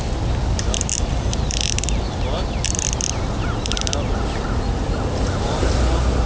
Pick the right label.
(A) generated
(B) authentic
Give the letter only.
B